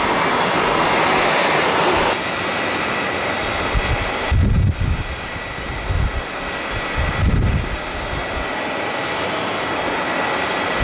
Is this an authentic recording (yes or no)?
yes